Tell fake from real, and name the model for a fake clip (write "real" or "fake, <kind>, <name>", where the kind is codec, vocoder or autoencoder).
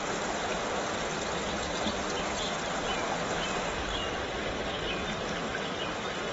real